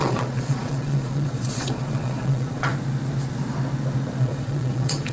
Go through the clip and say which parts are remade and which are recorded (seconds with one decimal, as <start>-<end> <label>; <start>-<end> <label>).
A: 0.0-2.7 remade; 2.7-4.2 recorded; 4.2-5.1 remade